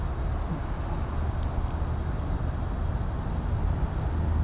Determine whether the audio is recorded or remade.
recorded